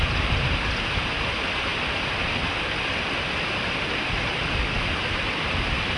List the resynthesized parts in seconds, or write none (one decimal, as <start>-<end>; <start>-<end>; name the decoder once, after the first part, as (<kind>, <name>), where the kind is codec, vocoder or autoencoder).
none